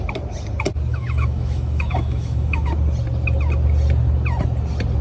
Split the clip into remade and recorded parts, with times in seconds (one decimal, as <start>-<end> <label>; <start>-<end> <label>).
0.0-0.9 recorded; 0.9-2.7 remade; 2.7-5.0 recorded